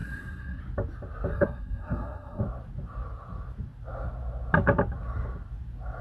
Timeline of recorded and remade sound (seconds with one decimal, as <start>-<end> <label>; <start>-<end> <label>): 0.0-0.6 remade; 0.6-1.3 recorded; 1.3-2.4 remade; 2.4-6.0 recorded